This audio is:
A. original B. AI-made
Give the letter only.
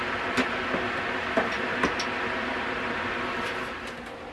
A